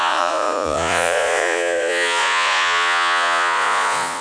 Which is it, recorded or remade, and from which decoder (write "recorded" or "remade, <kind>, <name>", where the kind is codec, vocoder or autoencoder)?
remade, vocoder, Vocos